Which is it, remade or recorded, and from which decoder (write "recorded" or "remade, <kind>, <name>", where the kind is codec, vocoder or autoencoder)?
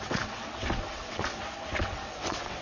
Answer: remade, vocoder, WaveNeXt